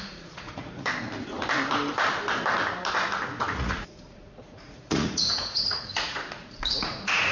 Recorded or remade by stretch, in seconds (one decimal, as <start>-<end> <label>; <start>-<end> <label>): 0.0-0.9 remade; 0.9-3.4 recorded; 3.4-7.3 remade